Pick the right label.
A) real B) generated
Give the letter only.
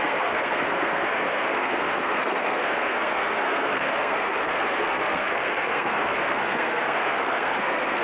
B